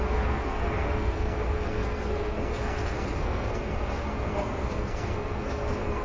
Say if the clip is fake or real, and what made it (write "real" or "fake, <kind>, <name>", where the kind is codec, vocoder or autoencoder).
fake, codec, SNAC